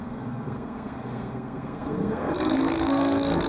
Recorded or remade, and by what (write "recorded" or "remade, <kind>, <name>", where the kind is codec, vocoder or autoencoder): remade, codec, SNAC